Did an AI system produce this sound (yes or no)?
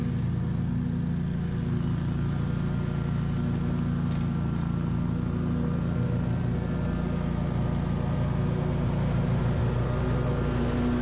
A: no